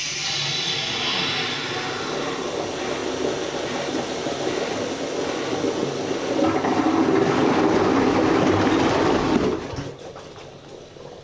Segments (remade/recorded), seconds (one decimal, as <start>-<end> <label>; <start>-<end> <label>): 0.0-11.2 recorded